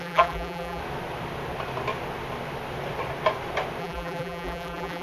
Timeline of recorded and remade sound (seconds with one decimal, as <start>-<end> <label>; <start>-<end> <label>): 0.0-0.8 remade; 0.8-3.8 recorded; 3.8-5.0 remade